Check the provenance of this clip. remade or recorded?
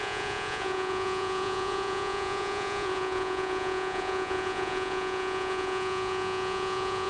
remade